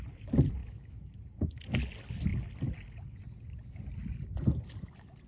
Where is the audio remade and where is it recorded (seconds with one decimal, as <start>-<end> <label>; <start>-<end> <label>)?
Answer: 0.0-0.6 recorded; 0.6-1.1 remade; 1.1-5.3 recorded